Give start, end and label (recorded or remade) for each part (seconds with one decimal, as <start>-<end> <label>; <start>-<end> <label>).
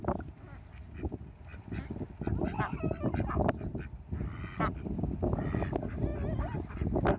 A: 0.0-7.2 recorded